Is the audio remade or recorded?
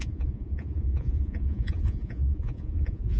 remade